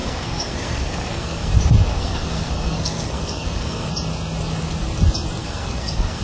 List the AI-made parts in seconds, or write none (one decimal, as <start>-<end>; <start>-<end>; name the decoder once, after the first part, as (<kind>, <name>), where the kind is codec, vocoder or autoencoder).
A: 0.0-1.5 (codec, SNAC); 1.9-3.9; 5.4-6.2